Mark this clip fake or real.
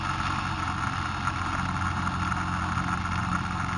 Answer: real